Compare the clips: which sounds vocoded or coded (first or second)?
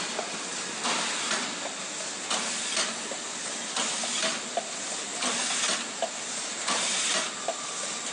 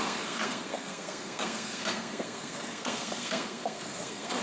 second